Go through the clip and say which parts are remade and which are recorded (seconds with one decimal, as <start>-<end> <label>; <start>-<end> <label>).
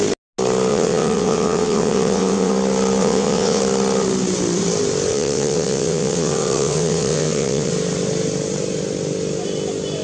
0.0-0.7 recorded; 0.7-2.5 remade; 2.5-3.0 recorded; 3.0-3.6 remade; 3.6-5.1 recorded; 5.1-7.7 remade; 7.7-10.0 recorded